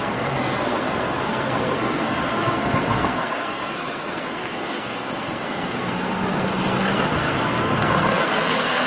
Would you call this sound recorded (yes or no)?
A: no